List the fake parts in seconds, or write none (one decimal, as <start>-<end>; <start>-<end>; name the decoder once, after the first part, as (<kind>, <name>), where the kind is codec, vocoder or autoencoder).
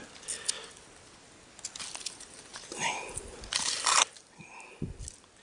2.5-4.0 (vocoder, BigVGAN v2)